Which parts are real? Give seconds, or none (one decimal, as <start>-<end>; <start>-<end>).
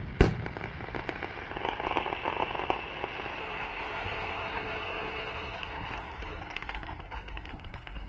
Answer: 0.0-3.4